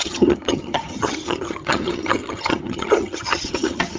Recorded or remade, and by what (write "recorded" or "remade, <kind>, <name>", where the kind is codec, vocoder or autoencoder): remade, vocoder, HiFi-GAN